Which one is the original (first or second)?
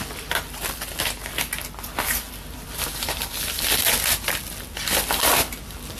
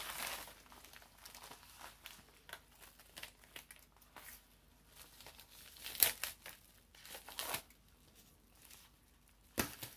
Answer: second